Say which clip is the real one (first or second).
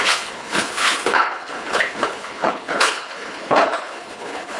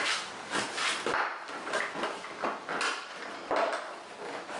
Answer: second